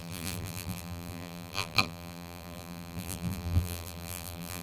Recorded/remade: remade